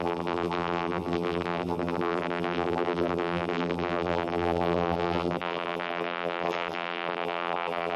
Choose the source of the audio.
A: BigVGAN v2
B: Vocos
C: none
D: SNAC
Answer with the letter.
A